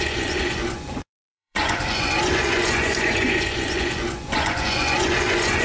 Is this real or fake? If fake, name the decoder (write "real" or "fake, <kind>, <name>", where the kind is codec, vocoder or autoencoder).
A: fake, vocoder, Vocos